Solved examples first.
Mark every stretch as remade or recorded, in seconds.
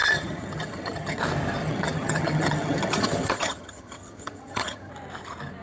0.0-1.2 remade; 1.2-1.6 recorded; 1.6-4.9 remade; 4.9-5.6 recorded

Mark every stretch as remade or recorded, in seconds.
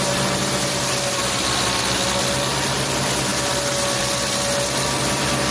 0.0-5.5 recorded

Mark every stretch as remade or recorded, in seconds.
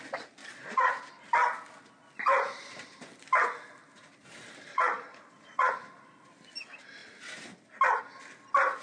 0.0-0.4 recorded; 0.4-0.9 remade; 0.9-4.7 recorded; 4.7-5.7 remade; 5.7-8.8 recorded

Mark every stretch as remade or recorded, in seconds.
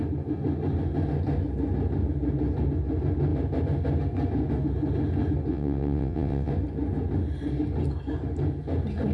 0.0-5.5 recorded; 5.5-6.5 remade; 6.5-9.1 recorded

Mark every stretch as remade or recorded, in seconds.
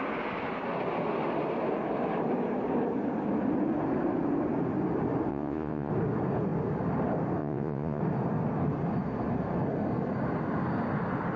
0.0-5.3 recorded; 5.3-5.9 remade; 5.9-7.4 recorded; 7.4-8.0 remade; 8.0-11.4 recorded